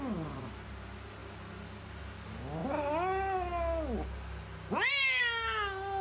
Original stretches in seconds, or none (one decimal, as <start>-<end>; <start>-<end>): 0.0-6.0